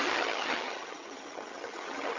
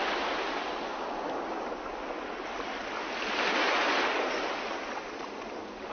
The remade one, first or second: first